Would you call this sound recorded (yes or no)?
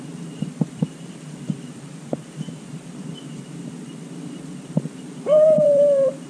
no